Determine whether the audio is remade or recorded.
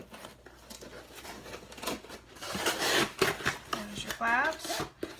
recorded